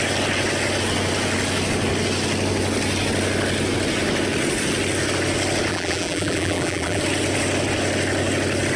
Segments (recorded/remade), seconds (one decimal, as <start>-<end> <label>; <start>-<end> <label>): 0.0-5.7 recorded; 5.7-7.0 remade; 7.0-8.8 recorded